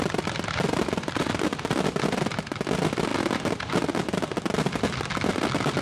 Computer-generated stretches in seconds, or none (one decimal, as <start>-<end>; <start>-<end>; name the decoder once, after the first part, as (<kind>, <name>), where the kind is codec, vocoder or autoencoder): none